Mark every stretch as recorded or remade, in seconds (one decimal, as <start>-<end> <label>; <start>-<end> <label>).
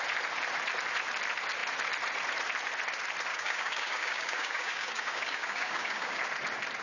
0.0-3.3 recorded; 3.3-6.2 remade; 6.2-6.8 recorded